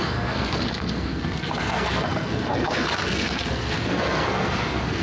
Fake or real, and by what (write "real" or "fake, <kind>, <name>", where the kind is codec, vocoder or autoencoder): fake, codec, SNAC